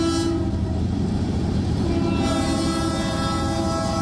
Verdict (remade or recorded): remade